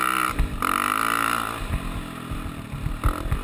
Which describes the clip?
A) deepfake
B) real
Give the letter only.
B